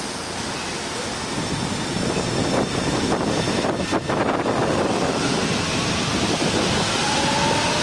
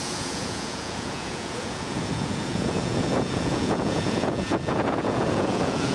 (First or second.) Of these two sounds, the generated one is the second